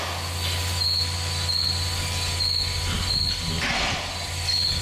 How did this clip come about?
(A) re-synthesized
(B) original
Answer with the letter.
B